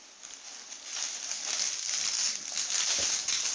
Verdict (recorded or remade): recorded